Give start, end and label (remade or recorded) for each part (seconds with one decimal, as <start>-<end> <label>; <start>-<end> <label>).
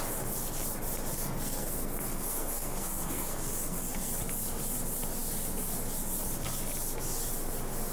0.0-1.1 recorded; 1.1-4.2 remade; 4.2-7.9 recorded